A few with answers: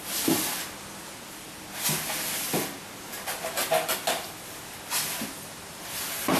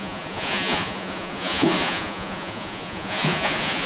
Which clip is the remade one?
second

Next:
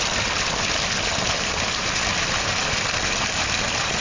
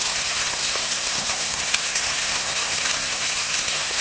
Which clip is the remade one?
second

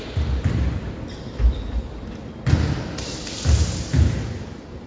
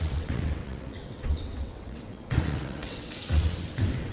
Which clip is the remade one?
second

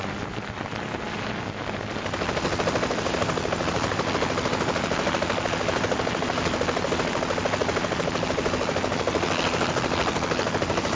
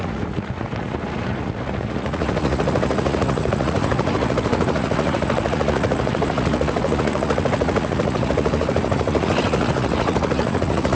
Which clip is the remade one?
second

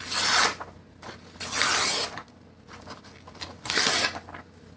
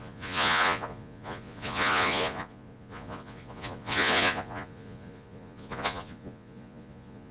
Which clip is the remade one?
second